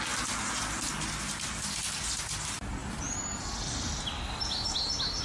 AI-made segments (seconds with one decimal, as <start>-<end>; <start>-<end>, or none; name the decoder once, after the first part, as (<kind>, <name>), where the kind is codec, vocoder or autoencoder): 2.8-3.9 (vocoder, BigVGAN v2)